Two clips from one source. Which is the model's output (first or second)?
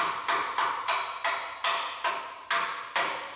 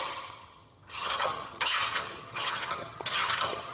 second